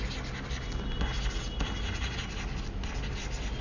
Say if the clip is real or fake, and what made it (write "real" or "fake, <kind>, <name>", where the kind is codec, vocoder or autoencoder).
real